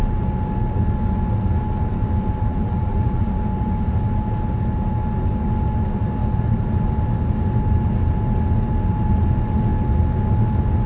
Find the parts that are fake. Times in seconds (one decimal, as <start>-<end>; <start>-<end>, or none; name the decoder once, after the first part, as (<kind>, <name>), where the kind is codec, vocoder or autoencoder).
2.5-3.3 (vocoder, BigVGAN v2)